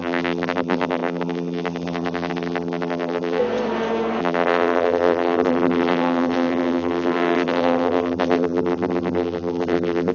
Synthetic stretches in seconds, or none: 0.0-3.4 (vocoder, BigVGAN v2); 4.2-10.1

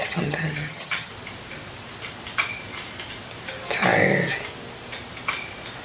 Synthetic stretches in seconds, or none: 0.0-1.1 (vocoder, HiFi-GAN)

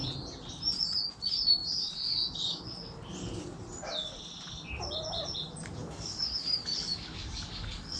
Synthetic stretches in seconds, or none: 5.8-8.0 (codec, DAC)

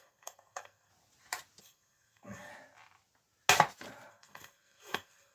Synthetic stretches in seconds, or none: 0.0-0.9 (codec, SNAC); 1.6-2.5; 4.1-5.3

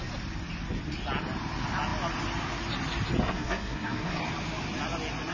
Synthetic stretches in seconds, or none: 3.2-4.2 (codec, SNAC)

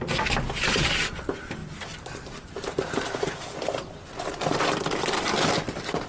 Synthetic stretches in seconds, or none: none

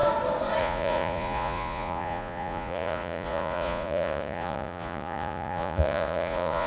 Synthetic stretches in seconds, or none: 0.6-6.7 (vocoder, Vocos)